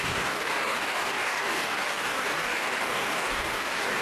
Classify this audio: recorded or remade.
remade